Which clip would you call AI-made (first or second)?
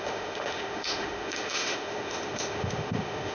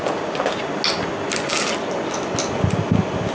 first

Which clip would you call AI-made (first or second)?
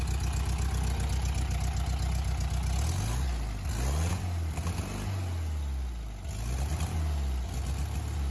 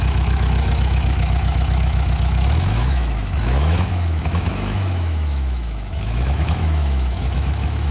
second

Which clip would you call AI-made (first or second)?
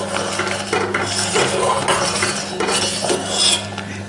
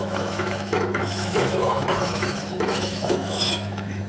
second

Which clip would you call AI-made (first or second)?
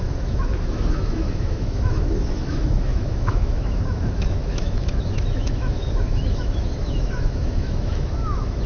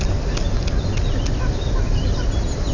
first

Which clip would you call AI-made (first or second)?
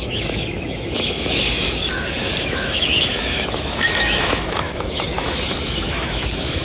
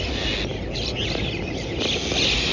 first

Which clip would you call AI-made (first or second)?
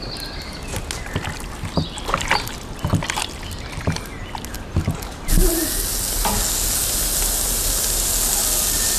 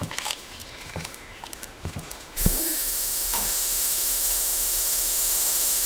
second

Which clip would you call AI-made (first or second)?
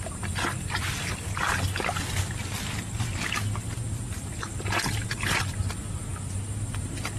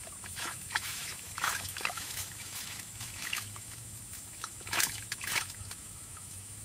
second